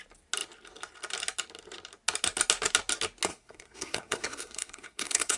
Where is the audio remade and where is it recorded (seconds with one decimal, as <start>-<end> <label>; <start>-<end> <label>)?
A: 0.0-3.3 recorded; 3.3-5.4 remade